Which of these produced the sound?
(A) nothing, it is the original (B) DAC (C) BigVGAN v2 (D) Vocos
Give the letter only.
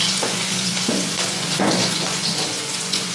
D